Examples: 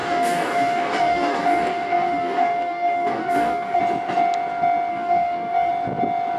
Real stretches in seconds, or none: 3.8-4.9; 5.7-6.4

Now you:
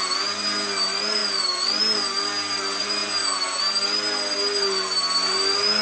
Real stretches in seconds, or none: 0.0-5.8

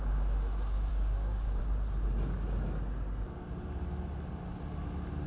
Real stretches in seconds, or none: 0.0-0.9; 1.6-5.3

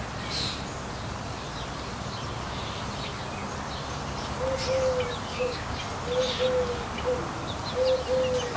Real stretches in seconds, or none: 0.0-5.3; 5.8-8.6

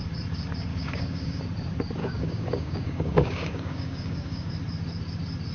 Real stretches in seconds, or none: 0.0-0.7; 1.4-2.0; 4.5-5.5

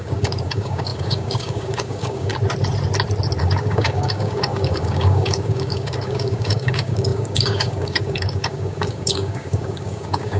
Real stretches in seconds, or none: 2.3-3.4

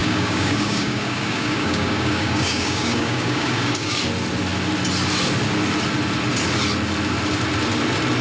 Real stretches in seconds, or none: 4.0-8.2

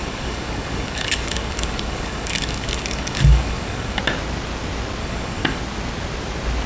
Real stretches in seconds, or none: 4.0-5.0; 5.6-6.7